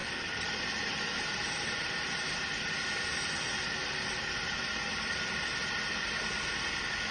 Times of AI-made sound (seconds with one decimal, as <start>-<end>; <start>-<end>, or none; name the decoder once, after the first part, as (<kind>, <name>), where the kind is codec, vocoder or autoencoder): none